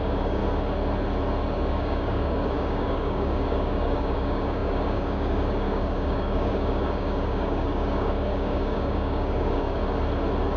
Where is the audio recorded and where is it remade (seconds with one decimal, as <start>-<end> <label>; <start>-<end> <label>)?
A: 0.0-0.4 remade; 0.4-1.5 recorded; 1.5-9.8 remade; 9.8-10.6 recorded